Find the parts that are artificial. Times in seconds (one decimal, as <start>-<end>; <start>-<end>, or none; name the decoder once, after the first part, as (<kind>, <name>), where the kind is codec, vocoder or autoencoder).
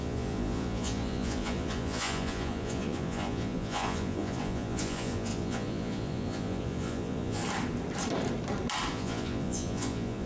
0.0-7.4 (vocoder, Vocos); 8.9-10.3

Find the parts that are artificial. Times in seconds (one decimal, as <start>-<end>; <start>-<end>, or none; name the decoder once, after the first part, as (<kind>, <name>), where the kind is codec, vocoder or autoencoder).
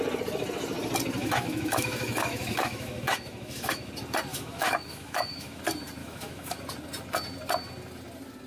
1.2-3.9 (autoencoder, DAC-VAE); 4.3-5.6; 6.0-6.6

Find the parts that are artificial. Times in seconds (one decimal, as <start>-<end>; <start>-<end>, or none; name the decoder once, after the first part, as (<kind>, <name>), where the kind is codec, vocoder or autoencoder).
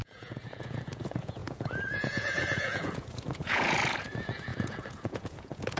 0.0-5.8 (vocoder, Vocos)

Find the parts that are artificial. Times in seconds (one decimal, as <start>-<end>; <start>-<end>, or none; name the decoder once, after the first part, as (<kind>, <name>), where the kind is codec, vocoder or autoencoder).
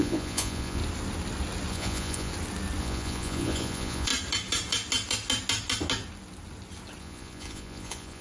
0.0-0.8 (vocoder, Vocos); 1.7-2.3; 2.8-4.1; 7.0-8.2